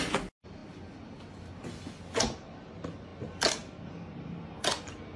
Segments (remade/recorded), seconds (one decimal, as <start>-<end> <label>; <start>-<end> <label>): 0.0-5.2 recorded